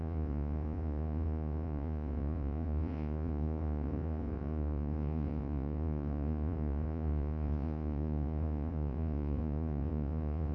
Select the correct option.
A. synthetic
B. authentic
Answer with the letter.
A